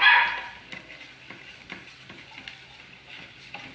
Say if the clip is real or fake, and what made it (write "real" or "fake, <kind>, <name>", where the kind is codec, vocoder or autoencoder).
real